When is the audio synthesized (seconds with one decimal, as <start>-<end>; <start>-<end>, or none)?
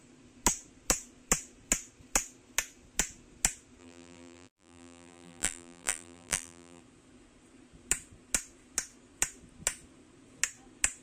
3.8-6.8